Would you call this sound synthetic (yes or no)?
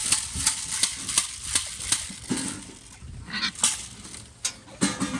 no